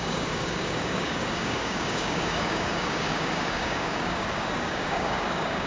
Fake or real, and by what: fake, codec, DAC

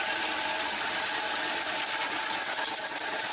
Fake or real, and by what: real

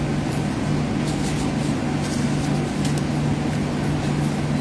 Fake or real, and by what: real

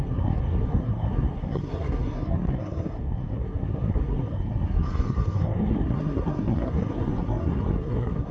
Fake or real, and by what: fake, codec, SNAC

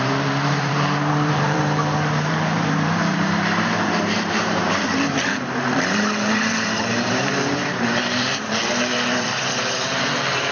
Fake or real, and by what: fake, vocoder, BigVGAN v2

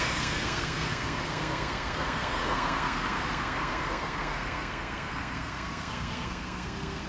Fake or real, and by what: fake, codec, SNAC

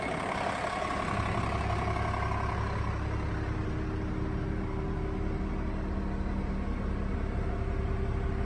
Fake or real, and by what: real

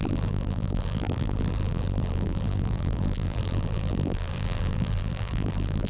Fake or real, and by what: fake, vocoder, BigVGAN v2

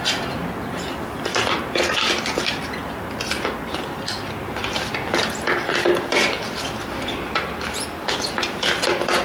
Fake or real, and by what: real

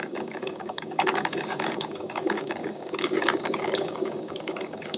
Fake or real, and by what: fake, codec, DAC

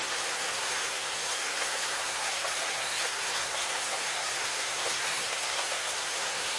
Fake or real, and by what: fake, codec, SNAC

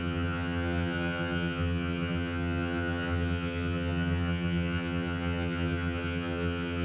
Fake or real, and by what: fake, vocoder, HiFi-GAN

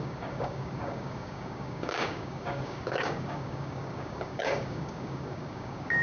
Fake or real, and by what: fake, codec, DAC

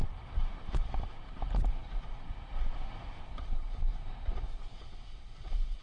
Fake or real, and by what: fake, vocoder, BigVGAN v2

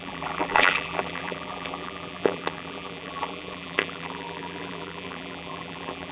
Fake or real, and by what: fake, vocoder, BigVGAN v2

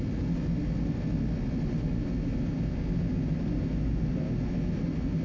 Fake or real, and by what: real